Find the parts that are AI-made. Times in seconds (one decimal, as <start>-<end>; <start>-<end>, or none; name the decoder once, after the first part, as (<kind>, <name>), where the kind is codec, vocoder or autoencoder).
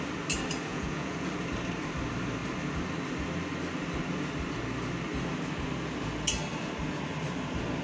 0.7-1.3 (vocoder, Vocos)